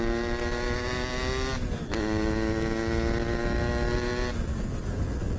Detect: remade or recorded recorded